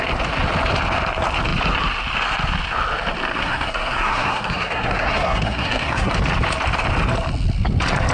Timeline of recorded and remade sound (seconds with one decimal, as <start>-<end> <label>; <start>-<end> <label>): 0.0-3.3 recorded; 3.3-6.1 remade; 6.1-8.1 recorded